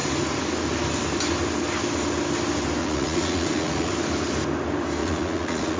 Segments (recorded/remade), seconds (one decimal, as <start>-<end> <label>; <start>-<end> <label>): 0.0-2.8 recorded; 2.8-3.9 remade; 3.9-5.0 recorded; 5.0-5.8 remade